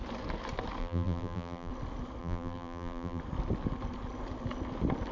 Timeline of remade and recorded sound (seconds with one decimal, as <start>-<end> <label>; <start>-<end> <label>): 0.0-0.8 recorded; 0.8-1.7 remade; 1.7-2.2 recorded; 2.2-3.2 remade; 3.2-5.1 recorded